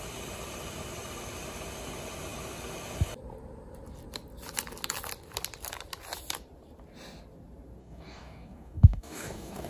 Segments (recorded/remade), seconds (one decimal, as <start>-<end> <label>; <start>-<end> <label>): 0.0-7.8 recorded; 7.8-9.7 remade